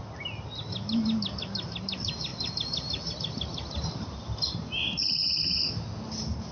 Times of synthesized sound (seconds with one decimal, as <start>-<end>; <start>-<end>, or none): none